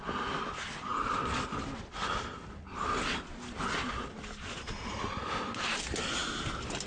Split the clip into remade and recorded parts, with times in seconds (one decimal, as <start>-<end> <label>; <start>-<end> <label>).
0.0-6.9 recorded